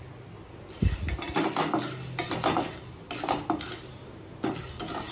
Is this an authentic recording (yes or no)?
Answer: yes